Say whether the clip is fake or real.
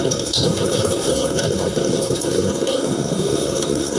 fake